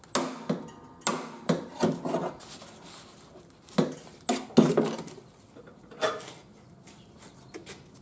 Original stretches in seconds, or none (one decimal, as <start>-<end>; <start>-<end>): 0.0-1.1; 1.7-8.0